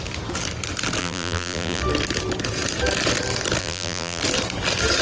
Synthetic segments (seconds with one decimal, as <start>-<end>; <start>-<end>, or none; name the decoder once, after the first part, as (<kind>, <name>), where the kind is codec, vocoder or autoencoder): 1.0-1.8 (vocoder, BigVGAN v2); 3.6-4.2